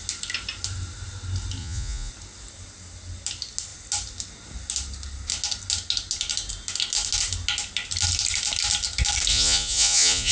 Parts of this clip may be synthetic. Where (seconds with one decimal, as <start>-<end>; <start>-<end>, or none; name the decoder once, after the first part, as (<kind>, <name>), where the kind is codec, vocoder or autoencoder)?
1.6-2.1 (vocoder, Vocos); 9.3-10.3

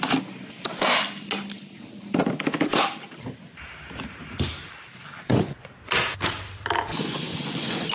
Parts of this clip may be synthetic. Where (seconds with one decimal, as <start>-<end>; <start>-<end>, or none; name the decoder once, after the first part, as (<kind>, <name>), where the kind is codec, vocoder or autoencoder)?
5.0-5.7 (vocoder, Vocos); 6.9-7.9